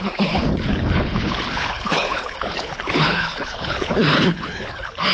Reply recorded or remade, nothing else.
remade